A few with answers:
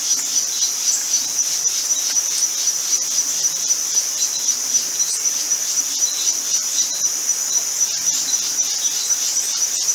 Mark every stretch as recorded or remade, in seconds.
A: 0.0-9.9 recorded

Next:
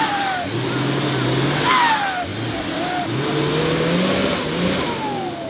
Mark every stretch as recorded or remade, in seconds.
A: 0.0-5.5 recorded